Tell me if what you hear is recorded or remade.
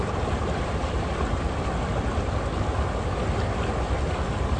recorded